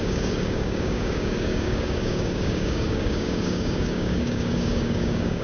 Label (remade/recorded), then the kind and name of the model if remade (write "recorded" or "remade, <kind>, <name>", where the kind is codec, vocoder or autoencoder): remade, codec, DAC